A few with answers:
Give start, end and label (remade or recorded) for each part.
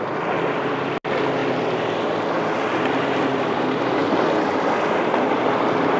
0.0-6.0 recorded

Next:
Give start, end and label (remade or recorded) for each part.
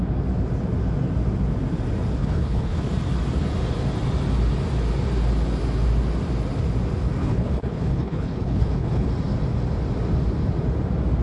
0.0-2.2 recorded; 2.2-2.8 remade; 2.8-7.2 recorded; 7.2-9.1 remade; 9.1-11.2 recorded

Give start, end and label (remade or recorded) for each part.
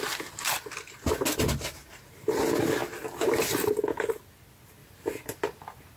0.0-4.8 recorded; 4.8-5.6 remade; 5.6-6.0 recorded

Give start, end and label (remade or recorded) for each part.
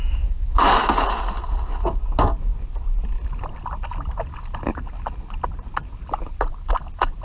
0.0-0.7 remade; 0.7-7.2 recorded